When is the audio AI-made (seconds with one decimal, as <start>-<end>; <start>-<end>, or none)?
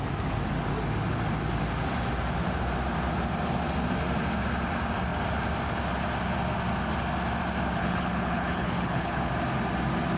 7.8-9.3